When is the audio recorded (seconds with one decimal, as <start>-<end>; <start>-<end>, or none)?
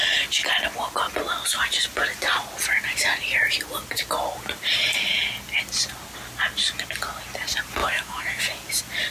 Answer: 0.0-7.8; 8.4-9.1